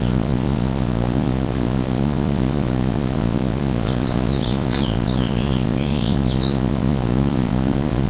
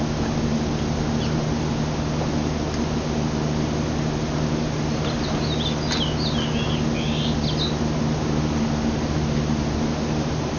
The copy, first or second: first